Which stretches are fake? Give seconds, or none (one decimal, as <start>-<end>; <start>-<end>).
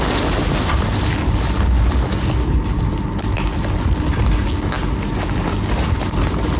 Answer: none